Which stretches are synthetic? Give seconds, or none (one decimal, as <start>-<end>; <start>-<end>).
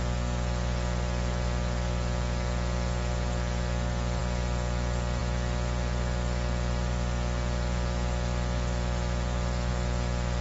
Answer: none